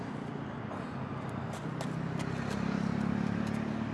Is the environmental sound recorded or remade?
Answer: recorded